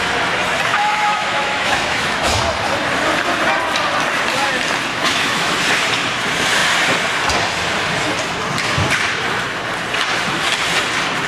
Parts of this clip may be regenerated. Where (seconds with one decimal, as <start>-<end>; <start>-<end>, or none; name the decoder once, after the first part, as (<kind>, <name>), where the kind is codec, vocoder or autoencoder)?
0.7-2.4 (autoencoder, DAC-VAE); 4.9-5.5